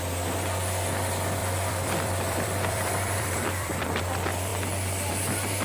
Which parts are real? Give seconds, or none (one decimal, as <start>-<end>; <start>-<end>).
0.0-1.4; 4.0-5.6